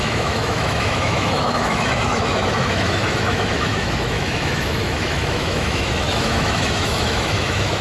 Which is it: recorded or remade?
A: remade